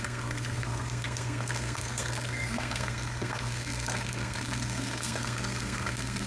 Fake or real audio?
fake